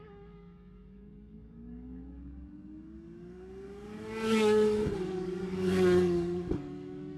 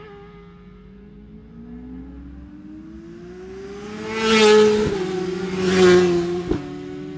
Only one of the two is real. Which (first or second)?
second